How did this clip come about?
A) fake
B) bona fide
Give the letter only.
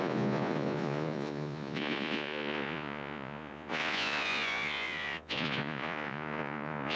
A